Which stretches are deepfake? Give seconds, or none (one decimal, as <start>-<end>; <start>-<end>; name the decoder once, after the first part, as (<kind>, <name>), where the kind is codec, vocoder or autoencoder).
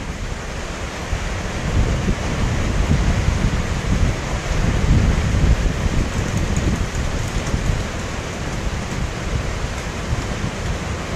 0.0-1.0 (vocoder, BigVGAN v2); 1.7-11.2